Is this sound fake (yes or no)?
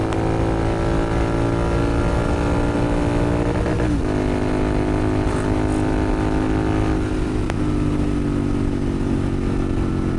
no